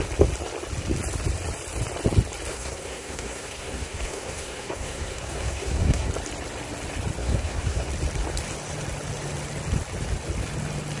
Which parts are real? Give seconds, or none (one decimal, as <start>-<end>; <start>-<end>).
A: 0.0-2.5; 6.1-7.2; 7.9-11.0